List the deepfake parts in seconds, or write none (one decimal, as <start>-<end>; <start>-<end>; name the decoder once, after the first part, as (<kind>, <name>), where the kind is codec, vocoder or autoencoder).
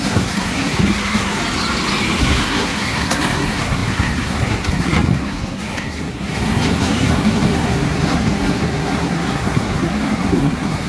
0.0-1.4 (codec, SNAC); 2.2-10.9